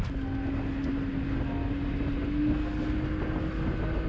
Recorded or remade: recorded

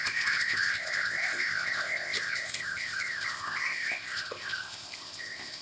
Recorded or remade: remade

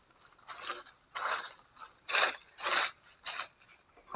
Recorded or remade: recorded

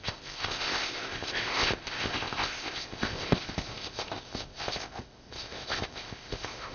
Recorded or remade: remade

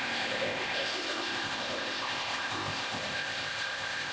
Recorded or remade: remade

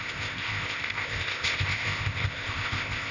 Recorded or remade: remade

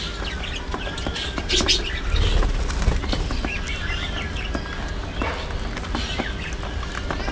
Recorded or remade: recorded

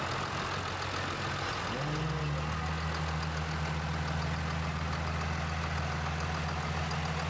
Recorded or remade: recorded